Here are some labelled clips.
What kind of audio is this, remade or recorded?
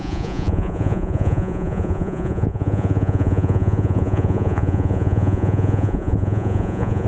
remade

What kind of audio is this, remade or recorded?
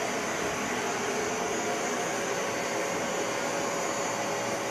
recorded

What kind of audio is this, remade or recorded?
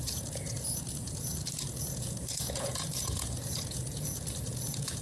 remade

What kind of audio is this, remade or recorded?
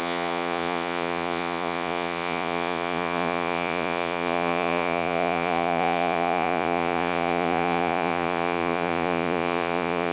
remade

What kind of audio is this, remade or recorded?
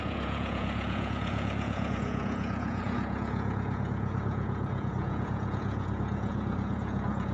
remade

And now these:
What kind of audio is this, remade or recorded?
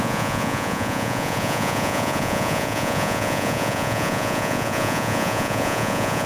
remade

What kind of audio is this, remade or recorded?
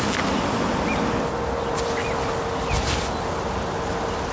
recorded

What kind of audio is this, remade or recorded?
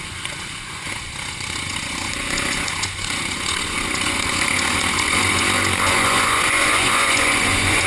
remade